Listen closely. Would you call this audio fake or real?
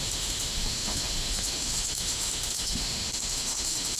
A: fake